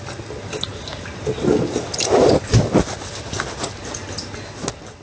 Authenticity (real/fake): real